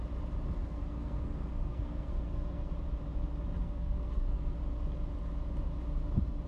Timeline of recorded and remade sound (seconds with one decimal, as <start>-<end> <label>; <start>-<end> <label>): 0.0-0.6 recorded; 0.6-2.7 remade; 2.7-3.6 recorded; 3.6-4.6 remade; 4.6-6.5 recorded